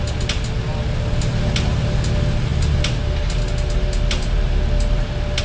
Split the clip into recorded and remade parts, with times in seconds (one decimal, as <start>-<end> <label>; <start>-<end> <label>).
0.0-5.4 recorded